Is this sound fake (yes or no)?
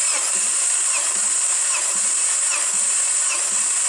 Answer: yes